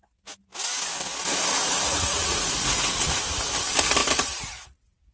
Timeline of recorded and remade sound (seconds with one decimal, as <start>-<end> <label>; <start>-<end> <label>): 0.0-1.6 recorded; 1.6-3.5 remade; 3.5-5.1 recorded